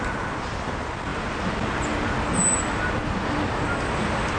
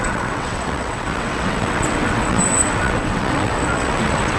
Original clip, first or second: first